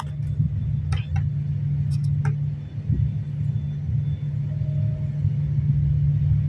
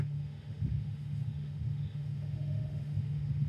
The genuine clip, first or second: first